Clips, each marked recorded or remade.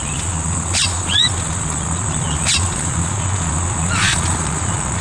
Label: remade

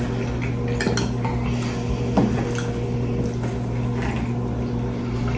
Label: recorded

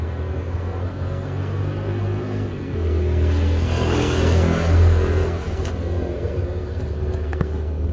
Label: remade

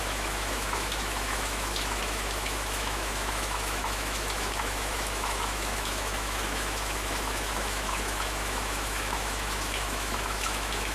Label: remade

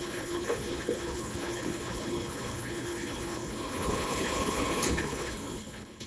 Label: remade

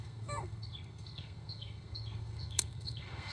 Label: remade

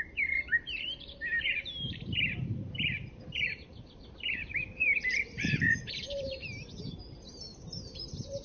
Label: remade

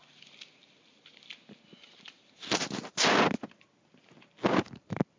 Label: recorded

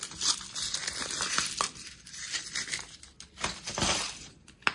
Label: recorded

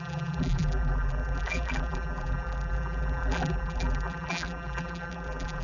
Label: remade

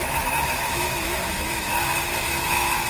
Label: remade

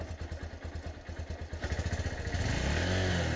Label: recorded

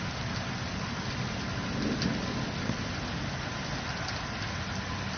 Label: recorded